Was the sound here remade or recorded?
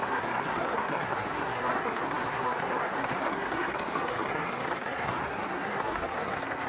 remade